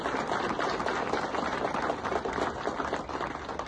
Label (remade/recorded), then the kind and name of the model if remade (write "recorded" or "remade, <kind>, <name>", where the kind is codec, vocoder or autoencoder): recorded